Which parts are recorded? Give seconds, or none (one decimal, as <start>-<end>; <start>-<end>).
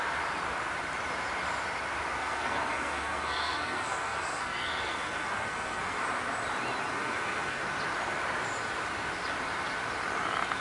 0.0-2.2; 6.0-6.9; 7.6-10.6